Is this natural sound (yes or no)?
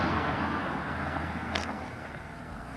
no